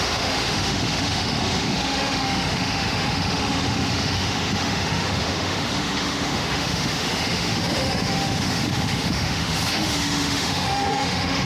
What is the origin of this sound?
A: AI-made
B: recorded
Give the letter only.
A